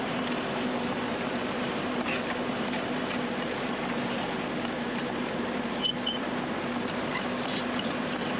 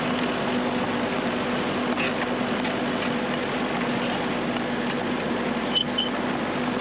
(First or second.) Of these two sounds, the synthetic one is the first